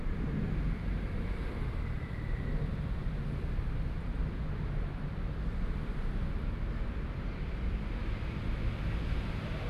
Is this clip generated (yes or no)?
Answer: no